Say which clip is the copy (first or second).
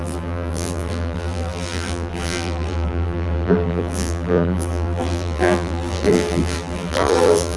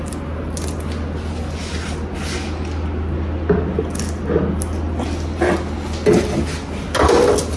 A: first